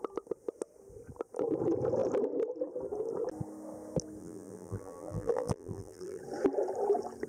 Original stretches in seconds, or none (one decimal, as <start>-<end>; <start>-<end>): 0.0-4.2; 6.2-7.3